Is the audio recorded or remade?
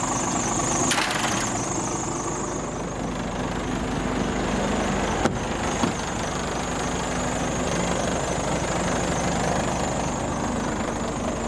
recorded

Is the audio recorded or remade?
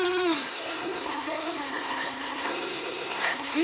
remade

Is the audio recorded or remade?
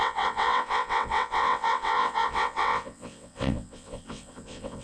remade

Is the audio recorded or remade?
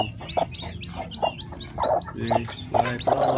recorded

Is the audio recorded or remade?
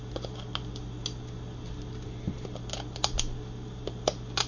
recorded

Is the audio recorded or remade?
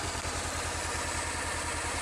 recorded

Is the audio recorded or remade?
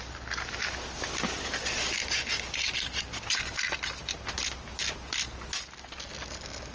recorded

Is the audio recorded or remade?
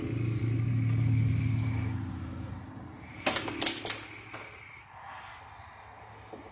recorded